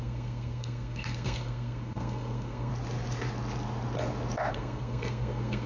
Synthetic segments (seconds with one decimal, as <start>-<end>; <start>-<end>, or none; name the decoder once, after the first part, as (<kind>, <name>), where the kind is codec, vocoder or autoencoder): 0.0-2.7 (codec, SNAC); 4.5-5.7

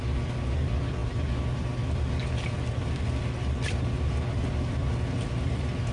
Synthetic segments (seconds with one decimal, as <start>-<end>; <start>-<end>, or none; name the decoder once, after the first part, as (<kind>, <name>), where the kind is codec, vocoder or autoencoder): none

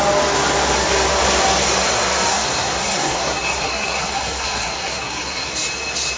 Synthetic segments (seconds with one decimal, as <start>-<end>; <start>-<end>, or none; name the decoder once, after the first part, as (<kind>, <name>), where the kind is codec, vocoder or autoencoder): 2.3-5.5 (codec, SNAC)

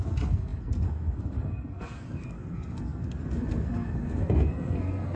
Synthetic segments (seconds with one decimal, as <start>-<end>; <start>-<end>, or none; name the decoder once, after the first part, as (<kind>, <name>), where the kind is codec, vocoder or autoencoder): 0.0-5.2 (codec, SNAC)

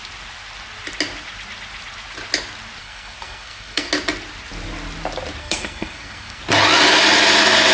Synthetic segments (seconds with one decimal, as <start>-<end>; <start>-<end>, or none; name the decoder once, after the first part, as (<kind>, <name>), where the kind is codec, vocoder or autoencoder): 2.8-3.9 (codec, SNAC); 5.4-6.4

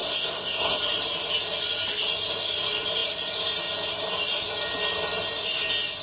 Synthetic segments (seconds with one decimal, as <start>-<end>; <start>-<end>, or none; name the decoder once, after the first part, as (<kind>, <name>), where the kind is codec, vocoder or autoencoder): 0.0-0.8 (codec, SNAC)

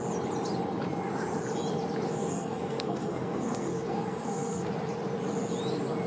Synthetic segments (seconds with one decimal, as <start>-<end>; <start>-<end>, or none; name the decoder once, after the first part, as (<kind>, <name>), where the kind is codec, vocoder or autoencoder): 2.1-4.7 (codec, SNAC)

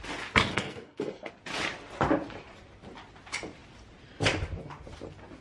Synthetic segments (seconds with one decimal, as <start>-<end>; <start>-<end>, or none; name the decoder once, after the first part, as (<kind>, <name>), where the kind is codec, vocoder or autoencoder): 0.5-1.3 (codec, SNAC)